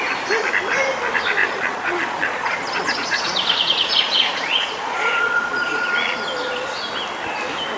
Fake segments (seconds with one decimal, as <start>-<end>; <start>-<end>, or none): 1.4-5.9

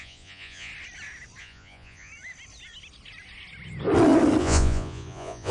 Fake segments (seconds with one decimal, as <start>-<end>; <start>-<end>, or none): 0.0-0.7; 1.4-2.1; 4.4-5.5

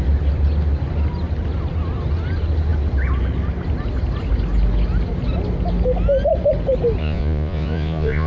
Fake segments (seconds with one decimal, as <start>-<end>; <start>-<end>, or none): 7.0-8.3

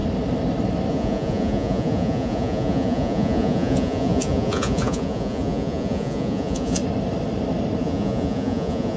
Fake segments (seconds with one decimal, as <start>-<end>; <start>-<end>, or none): 0.9-6.8; 7.8-9.0

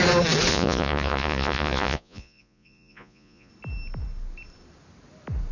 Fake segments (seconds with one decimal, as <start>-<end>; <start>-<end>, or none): 0.5-3.5

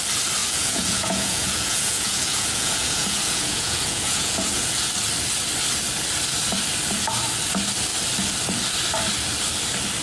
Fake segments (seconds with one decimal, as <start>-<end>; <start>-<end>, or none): 0.4-4.9